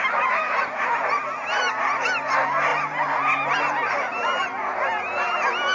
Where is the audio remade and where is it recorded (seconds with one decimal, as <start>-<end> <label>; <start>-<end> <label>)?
0.0-5.7 recorded